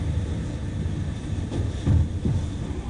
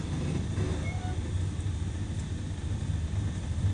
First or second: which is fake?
first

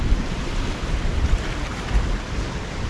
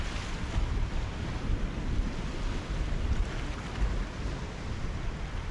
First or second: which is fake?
first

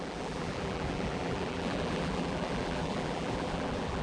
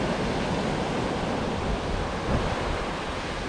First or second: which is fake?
first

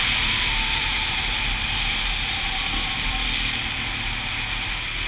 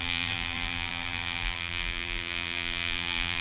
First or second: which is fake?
second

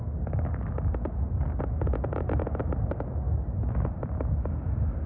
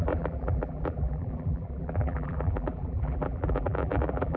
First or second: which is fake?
second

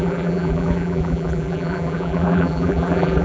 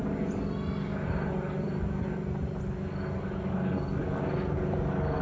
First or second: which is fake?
first